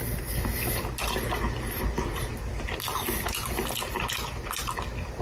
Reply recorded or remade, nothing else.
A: recorded